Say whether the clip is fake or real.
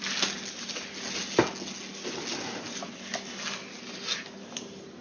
real